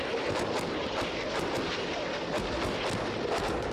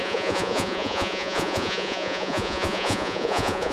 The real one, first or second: first